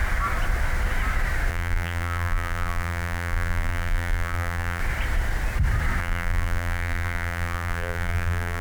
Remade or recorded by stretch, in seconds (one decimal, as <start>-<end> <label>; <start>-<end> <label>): 0.0-1.5 recorded; 1.5-4.8 remade; 4.8-6.0 recorded; 6.0-8.6 remade